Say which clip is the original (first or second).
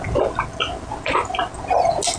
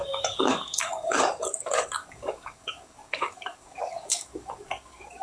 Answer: first